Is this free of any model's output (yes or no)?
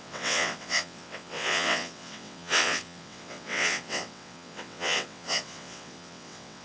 no